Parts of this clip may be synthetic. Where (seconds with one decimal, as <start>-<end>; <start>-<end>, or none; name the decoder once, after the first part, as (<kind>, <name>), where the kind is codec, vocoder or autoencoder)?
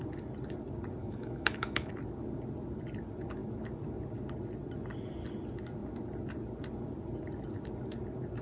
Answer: 1.0-1.9 (autoencoder, DAC-VAE)